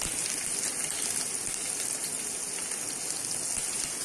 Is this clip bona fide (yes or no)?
yes